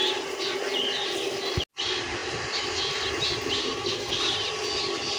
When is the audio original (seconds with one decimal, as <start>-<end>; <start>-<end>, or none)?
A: 0.0-3.6; 4.2-5.2